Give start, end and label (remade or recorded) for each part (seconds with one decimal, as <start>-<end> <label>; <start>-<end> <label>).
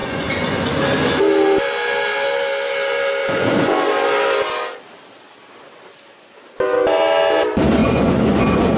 0.0-0.7 remade; 0.7-3.2 recorded; 3.2-3.9 remade; 3.9-7.8 recorded; 7.8-8.8 remade